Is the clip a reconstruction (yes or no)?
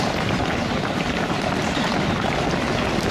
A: yes